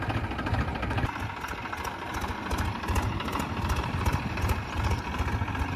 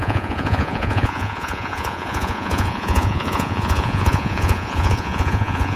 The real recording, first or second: first